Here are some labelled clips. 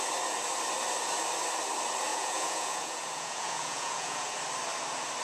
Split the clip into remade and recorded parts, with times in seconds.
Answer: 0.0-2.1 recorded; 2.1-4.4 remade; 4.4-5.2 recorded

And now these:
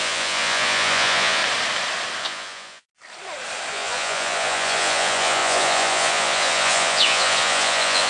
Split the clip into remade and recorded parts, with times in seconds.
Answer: 0.0-1.4 remade; 1.4-2.2 recorded; 2.2-2.9 remade; 2.9-3.7 recorded; 3.7-8.1 remade